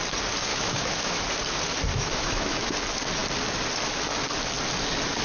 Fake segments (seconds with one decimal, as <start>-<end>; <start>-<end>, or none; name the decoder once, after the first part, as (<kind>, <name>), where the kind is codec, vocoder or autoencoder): 0.5-1.2 (autoencoder, DAC-VAE); 1.9-2.7